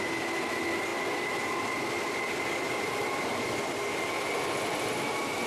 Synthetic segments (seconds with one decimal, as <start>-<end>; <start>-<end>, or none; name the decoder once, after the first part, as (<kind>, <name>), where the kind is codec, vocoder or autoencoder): none